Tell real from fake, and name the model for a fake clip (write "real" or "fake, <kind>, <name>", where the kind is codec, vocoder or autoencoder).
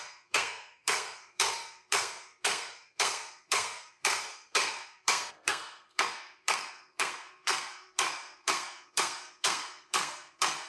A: fake, codec, SNAC